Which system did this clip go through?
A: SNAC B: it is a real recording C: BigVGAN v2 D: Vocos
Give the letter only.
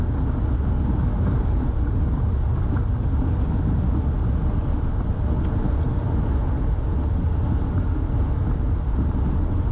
B